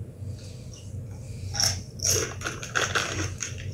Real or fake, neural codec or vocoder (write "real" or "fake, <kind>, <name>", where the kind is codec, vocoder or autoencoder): real